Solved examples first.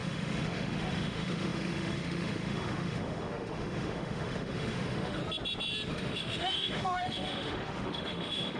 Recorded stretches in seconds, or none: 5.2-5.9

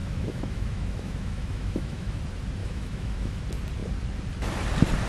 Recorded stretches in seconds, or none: 2.2-2.6; 3.4-5.1

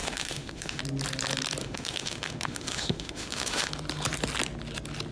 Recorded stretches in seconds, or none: 0.8-1.6; 3.7-5.1

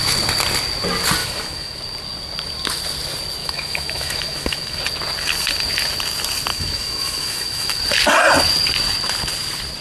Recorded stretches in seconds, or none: 0.0-1.2; 1.8-3.4; 4.8-6.5; 7.8-9.8

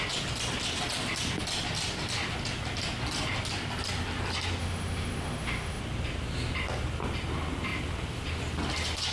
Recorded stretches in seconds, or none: 0.0-4.6; 5.8-9.1

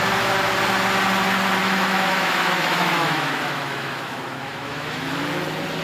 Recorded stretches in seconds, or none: 0.0-1.6; 5.1-5.8

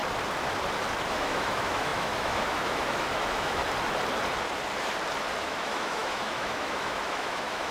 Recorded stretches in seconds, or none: 0.0-1.1; 3.6-5.4

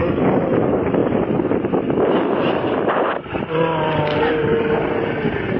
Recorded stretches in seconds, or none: 0.0-5.6